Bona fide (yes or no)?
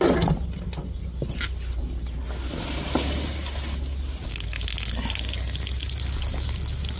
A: yes